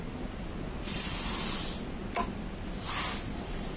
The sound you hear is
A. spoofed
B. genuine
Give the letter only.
B